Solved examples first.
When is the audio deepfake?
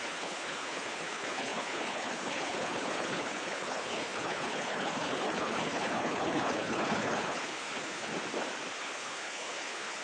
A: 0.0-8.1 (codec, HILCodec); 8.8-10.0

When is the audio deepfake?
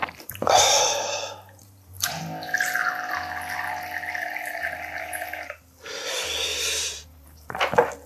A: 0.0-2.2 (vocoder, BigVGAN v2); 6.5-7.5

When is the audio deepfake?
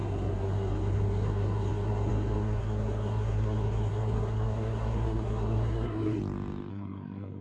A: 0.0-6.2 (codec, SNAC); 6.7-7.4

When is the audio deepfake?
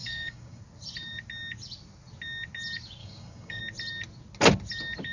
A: 0.0-0.6 (codec, DAC); 3.0-3.6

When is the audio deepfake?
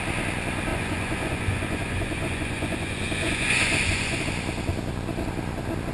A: 0.7-4.2 (vocoder, Vocos)